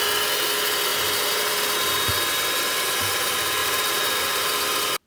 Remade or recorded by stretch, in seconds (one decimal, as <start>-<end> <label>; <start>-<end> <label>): 0.0-0.9 recorded; 0.9-2.1 remade; 2.1-3.6 recorded; 3.6-4.5 remade; 4.5-5.1 recorded